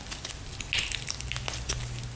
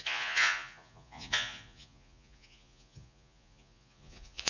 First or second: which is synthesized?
second